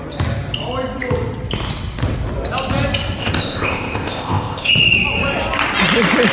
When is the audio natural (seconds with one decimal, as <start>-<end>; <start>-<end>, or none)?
0.0-3.2; 4.7-6.3